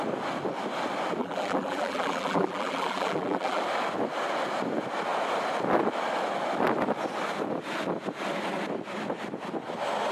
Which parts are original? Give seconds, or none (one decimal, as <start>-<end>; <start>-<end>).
0.0-1.2; 3.6-10.1